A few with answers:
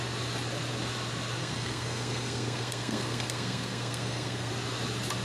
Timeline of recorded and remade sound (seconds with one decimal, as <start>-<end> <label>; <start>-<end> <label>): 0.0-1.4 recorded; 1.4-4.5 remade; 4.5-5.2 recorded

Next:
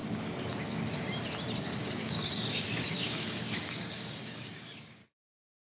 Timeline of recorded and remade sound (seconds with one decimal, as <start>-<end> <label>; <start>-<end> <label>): 0.0-0.5 remade; 0.5-2.0 recorded; 2.0-5.7 remade

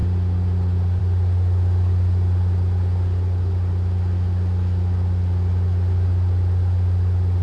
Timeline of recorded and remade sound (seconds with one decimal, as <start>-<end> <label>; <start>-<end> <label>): 0.0-7.4 recorded

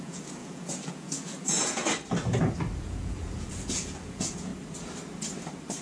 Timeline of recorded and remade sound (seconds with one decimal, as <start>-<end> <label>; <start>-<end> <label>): 0.0-1.8 remade; 1.8-2.8 recorded; 2.8-4.5 remade; 4.5-5.8 recorded

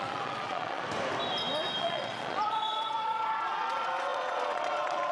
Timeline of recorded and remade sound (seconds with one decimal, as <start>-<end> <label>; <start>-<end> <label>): 0.0-0.8 remade; 0.8-1.8 recorded; 1.8-5.1 remade